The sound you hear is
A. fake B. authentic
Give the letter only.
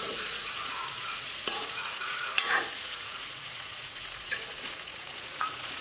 A